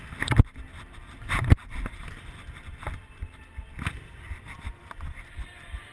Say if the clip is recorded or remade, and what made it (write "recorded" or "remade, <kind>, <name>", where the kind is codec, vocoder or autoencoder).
recorded